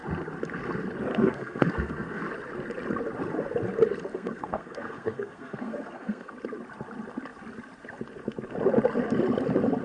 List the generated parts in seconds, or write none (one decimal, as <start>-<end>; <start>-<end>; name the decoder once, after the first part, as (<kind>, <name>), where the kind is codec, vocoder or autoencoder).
1.1-2.2 (codec, SNAC); 4.1-6.3

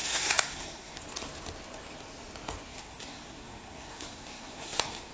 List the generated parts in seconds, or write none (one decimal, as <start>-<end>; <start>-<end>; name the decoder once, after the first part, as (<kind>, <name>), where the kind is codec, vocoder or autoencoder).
0.0-1.0 (codec, SNAC); 2.7-5.1

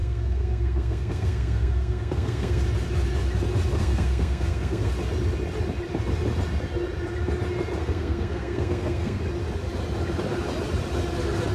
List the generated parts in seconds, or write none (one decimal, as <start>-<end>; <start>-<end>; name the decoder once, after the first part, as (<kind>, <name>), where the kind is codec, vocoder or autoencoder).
0.0-2.6 (codec, SNAC); 3.8-4.9; 7.8-9.2

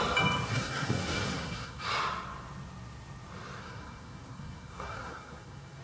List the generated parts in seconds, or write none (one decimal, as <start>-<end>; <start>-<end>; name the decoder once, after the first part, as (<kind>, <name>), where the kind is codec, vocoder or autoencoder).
0.5-1.9 (codec, SNAC); 3.6-5.8

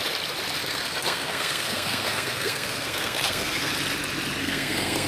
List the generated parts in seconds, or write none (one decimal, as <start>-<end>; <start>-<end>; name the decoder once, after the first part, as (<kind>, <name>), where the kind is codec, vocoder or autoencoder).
0.6-3.7 (codec, SNAC); 4.4-5.1

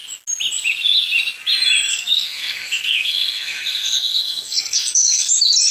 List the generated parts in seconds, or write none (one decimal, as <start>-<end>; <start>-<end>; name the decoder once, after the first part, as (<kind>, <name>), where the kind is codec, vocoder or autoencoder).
1.9-5.3 (codec, SNAC)

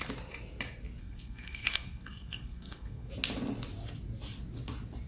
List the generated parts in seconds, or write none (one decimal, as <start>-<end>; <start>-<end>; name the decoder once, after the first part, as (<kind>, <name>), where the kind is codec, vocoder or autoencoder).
1.0-3.1 (codec, SNAC)